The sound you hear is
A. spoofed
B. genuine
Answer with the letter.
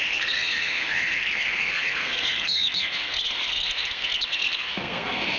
A